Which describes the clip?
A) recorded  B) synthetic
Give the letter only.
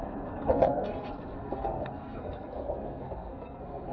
B